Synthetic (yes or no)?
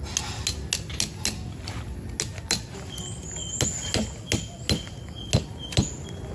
no